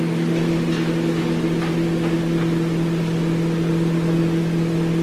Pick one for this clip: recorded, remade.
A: recorded